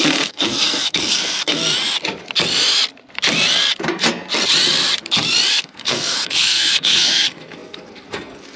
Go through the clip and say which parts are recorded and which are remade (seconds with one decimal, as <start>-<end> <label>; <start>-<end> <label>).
0.0-1.6 remade; 1.6-5.5 recorded; 5.5-8.6 remade